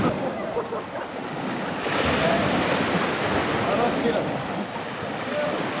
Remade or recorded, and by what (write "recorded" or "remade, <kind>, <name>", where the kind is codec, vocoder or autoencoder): recorded